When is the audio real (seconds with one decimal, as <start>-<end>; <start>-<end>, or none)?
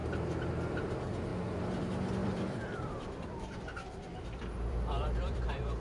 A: 0.0-2.2